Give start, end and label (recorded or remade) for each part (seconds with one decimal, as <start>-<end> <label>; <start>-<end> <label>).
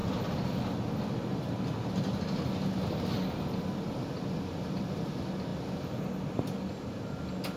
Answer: 0.0-7.6 recorded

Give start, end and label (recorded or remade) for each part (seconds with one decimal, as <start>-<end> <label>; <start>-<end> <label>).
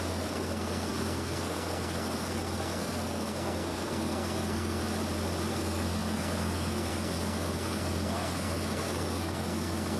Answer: 0.0-4.8 remade; 4.8-5.5 recorded; 5.5-10.0 remade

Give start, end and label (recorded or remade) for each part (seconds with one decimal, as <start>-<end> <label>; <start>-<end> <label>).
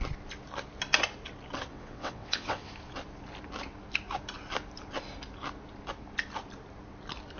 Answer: 0.0-1.7 recorded; 1.7-2.7 remade; 2.7-7.4 recorded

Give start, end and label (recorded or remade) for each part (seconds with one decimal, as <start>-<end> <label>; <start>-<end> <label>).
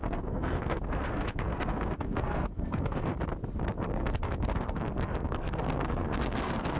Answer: 0.0-3.1 remade; 3.1-3.9 recorded; 3.9-6.8 remade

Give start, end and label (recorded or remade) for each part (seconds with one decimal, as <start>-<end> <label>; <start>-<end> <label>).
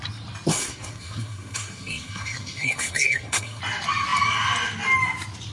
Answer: 0.0-0.5 recorded; 0.5-3.6 remade; 3.6-5.5 recorded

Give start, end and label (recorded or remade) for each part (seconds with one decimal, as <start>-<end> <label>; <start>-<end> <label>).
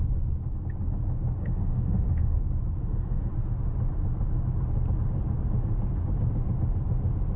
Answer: 0.0-1.4 recorded; 1.4-2.4 remade; 2.4-2.8 recorded; 2.8-3.3 remade; 3.3-7.4 recorded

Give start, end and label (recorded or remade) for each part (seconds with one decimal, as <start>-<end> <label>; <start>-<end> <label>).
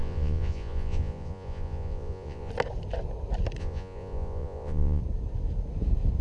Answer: 0.0-2.5 remade; 2.5-3.6 recorded; 3.6-5.0 remade; 5.0-6.2 recorded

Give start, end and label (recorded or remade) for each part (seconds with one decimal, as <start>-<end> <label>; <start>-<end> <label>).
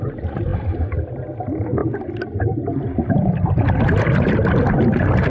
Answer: 0.0-5.3 recorded